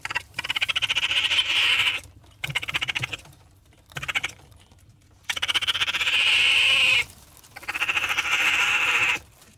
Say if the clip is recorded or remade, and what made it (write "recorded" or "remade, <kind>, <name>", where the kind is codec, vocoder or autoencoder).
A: remade, vocoder, BigVGAN v2